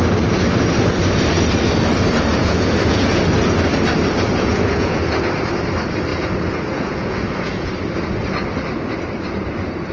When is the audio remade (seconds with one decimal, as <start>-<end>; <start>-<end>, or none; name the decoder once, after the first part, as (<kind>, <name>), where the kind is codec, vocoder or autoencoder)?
2.3-3.2 (vocoder, Vocos); 4.3-5.0; 6.1-7.7

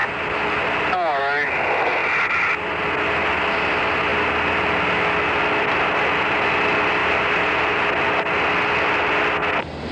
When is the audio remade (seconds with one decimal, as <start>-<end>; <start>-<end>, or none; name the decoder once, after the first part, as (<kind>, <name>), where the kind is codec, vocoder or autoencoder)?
7.0-7.9 (vocoder, BigVGAN v2)